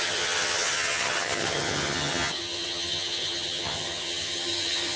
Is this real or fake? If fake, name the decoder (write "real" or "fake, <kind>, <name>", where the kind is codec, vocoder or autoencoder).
fake, vocoder, HiFi-GAN